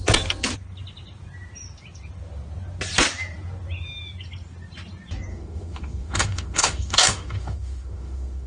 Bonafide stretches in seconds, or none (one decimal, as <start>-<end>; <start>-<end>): 0.0-5.3